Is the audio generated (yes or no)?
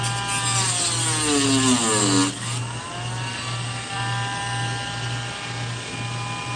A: no